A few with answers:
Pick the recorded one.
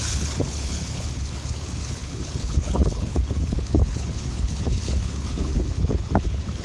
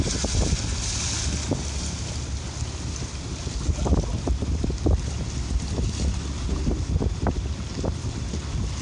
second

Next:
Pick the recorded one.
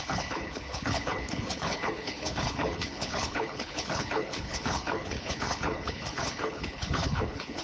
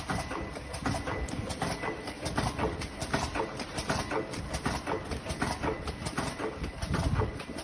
second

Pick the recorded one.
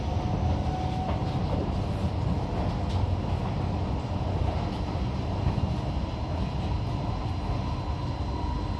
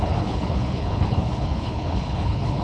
first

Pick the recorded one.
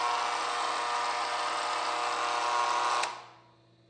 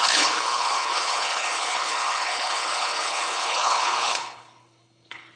first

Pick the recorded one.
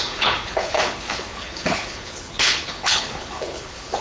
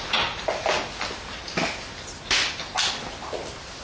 second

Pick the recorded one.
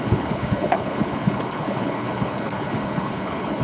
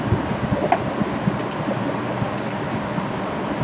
second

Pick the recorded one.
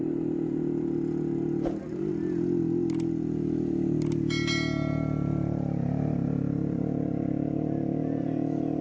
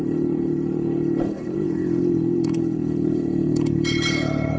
first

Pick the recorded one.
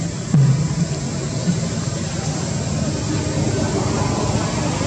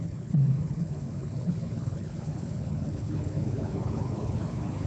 first